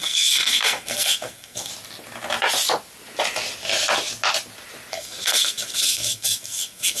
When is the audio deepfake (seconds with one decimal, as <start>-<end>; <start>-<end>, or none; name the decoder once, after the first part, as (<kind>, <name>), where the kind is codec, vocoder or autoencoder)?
0.0-1.7 (codec, SNAC); 4.9-7.0